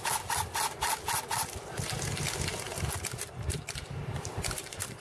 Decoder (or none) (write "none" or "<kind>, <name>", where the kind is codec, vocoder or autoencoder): none